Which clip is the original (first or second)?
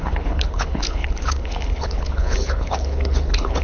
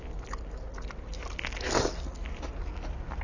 second